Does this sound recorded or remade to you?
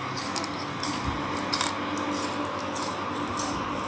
recorded